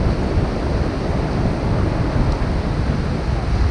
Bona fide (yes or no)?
yes